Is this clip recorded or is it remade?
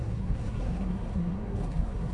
remade